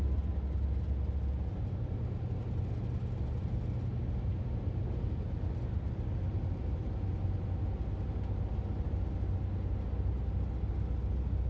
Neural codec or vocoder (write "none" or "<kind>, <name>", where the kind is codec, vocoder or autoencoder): none